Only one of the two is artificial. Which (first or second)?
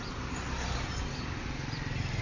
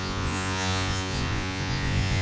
second